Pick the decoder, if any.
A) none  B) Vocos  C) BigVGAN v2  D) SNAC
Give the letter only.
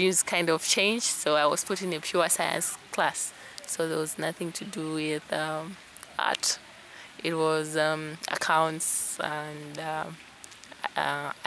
A